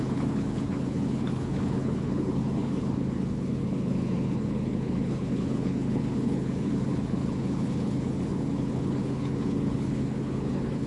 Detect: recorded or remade remade